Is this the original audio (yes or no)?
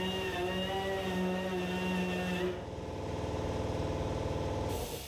yes